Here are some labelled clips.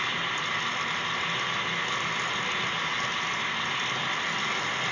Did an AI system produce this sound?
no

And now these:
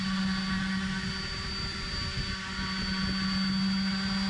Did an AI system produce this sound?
no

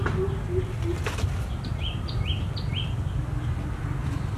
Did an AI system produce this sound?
no